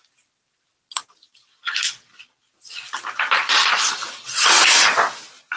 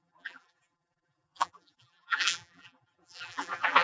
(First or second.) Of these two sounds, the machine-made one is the second